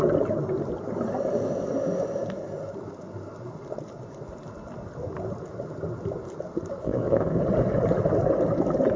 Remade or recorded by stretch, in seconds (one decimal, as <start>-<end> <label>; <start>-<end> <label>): 0.0-6.8 recorded; 6.8-7.4 remade; 7.4-9.0 recorded